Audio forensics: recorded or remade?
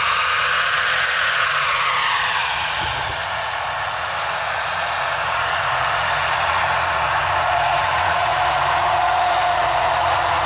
remade